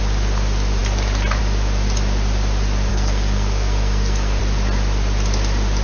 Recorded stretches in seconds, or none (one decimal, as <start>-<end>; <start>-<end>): 0.0-2.9; 4.4-5.8